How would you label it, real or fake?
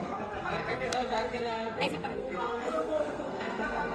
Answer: fake